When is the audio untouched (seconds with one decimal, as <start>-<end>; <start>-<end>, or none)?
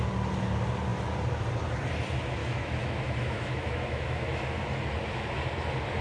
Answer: 0.0-2.4; 4.4-6.0